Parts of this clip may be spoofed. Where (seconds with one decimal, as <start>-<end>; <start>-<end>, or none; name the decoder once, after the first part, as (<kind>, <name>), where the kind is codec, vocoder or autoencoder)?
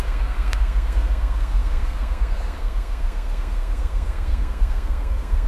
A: 0.0-5.5 (codec, SNAC)